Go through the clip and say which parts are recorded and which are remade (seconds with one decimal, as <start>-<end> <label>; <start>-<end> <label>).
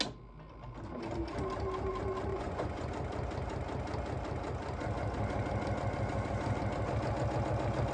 0.0-2.3 recorded; 2.3-2.9 remade; 2.9-7.9 recorded